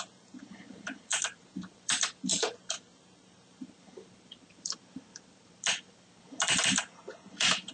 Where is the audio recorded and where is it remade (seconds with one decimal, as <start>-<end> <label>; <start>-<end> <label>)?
0.0-7.7 remade